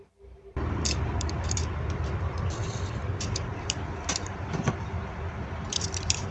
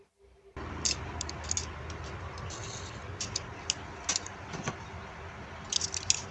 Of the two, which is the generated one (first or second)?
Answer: first